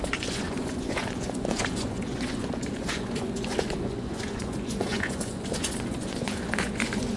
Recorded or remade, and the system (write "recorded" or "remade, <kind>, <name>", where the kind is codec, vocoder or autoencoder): remade, vocoder, Vocos